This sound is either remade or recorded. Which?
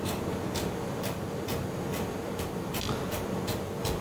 recorded